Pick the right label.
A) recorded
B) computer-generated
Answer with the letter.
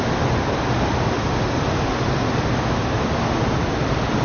A